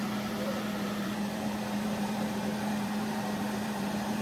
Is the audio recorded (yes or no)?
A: no